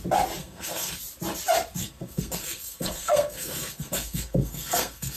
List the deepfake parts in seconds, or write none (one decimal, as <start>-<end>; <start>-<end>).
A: 0.4-1.0; 1.8-5.2